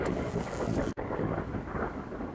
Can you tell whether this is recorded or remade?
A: remade